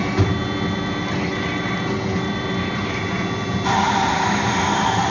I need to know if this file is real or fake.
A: real